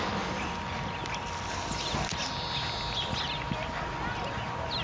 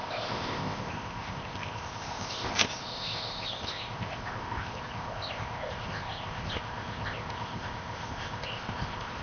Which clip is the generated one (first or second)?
second